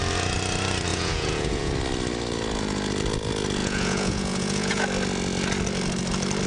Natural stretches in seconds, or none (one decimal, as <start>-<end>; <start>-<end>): 0.0-0.9; 1.7-3.6; 4.8-6.5